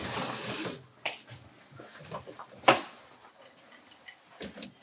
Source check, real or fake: real